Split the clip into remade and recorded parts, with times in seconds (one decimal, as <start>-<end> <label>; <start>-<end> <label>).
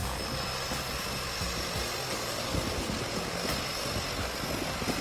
0.0-5.0 recorded